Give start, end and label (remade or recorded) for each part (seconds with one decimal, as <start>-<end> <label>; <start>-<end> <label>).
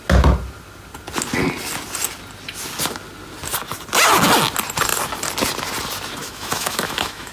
0.0-6.2 recorded; 6.2-7.3 remade